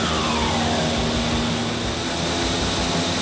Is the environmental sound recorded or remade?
recorded